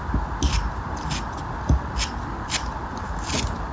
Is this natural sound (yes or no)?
yes